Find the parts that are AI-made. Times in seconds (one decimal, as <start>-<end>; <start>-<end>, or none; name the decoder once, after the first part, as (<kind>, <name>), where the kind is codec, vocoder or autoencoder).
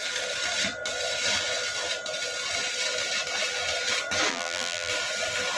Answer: 4.3-4.9 (vocoder, BigVGAN v2)